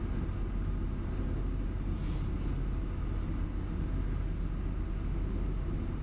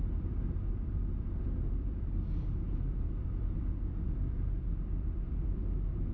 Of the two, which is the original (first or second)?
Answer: first